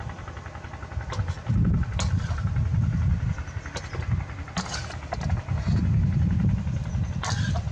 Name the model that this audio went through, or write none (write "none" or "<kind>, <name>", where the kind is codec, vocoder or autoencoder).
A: none